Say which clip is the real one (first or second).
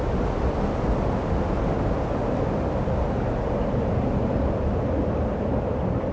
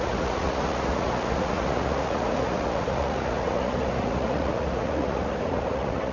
first